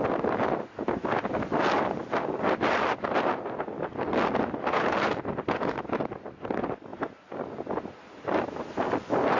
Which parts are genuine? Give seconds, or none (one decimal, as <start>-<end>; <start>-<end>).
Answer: 0.0-9.4